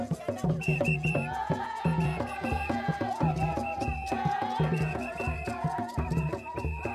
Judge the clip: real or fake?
fake